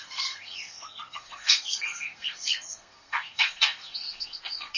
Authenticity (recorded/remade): remade